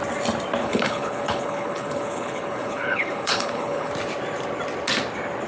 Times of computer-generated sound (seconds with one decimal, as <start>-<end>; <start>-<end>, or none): 0.6-3.9